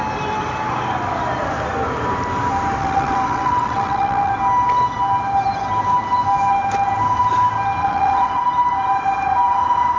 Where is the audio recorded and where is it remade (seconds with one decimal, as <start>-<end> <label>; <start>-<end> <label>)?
0.0-2.8 recorded; 2.8-4.3 remade; 4.3-7.8 recorded; 7.8-8.4 remade; 8.4-10.0 recorded

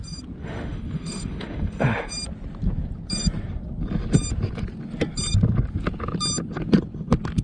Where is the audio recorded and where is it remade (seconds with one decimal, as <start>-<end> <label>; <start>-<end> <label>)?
0.0-0.4 recorded; 0.4-2.1 remade; 2.1-7.4 recorded

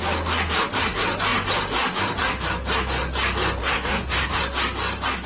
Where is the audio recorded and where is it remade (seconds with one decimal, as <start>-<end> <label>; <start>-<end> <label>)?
0.0-3.6 recorded; 3.6-4.4 remade; 4.4-5.3 recorded

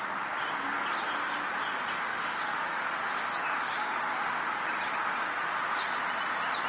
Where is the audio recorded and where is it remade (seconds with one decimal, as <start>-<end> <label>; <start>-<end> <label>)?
0.0-1.9 recorded; 1.9-3.1 remade; 3.1-3.6 recorded; 3.6-4.6 remade; 4.6-6.7 recorded

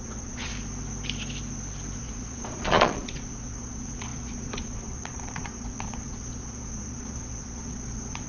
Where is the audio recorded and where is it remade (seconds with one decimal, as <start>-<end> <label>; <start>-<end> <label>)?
0.0-0.5 remade; 0.5-2.0 recorded; 2.0-8.3 remade